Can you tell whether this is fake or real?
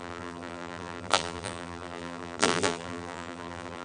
fake